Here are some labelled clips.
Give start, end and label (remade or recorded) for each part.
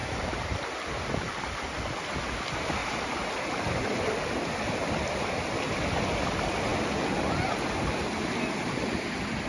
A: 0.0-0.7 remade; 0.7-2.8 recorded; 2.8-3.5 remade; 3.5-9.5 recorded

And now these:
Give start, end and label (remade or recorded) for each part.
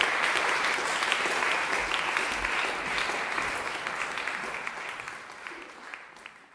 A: 0.0-1.8 remade; 1.8-5.4 recorded; 5.4-6.5 remade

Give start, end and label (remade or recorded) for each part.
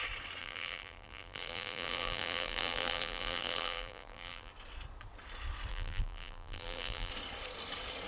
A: 0.0-0.4 recorded; 0.4-4.5 remade; 4.5-5.7 recorded; 5.7-7.1 remade; 7.1-8.1 recorded